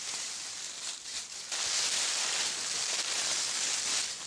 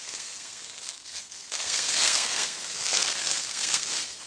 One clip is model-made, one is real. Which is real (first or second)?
first